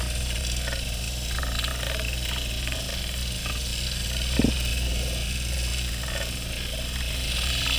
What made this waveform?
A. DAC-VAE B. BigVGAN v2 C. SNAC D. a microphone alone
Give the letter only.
D